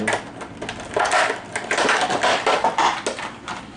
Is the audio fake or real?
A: real